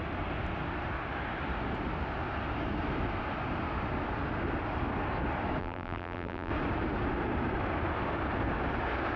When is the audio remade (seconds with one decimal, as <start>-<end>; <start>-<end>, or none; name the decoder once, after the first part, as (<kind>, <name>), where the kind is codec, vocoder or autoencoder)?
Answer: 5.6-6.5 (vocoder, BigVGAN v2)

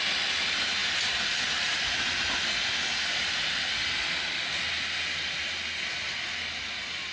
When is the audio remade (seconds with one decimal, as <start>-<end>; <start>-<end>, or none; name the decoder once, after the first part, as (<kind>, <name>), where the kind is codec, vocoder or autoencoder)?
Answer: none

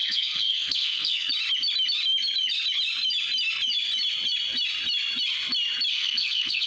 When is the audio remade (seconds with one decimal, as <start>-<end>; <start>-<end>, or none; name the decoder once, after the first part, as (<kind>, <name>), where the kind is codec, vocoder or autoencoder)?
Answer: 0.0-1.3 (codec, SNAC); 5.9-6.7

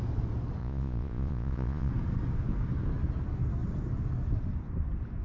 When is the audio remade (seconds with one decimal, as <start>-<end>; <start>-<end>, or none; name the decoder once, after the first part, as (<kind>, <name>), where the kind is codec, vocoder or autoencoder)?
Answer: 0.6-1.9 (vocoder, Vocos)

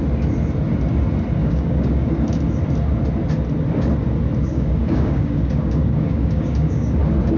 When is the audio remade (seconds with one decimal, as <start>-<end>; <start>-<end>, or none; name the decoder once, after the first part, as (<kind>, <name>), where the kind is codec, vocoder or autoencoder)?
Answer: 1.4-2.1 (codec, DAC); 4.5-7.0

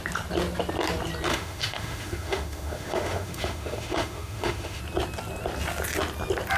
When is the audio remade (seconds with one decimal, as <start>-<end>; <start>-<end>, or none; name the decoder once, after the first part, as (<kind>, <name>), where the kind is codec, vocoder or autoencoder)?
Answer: 1.3-4.8 (autoencoder, DAC-VAE)

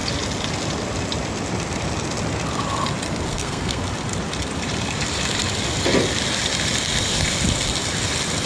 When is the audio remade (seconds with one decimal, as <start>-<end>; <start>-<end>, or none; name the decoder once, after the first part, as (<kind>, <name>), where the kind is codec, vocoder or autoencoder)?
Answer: 3.3-3.8 (codec, SNAC)